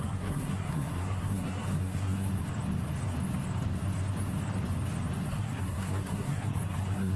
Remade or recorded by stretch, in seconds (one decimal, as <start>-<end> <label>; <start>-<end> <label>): 0.0-2.3 remade; 2.3-5.3 recorded; 5.3-7.2 remade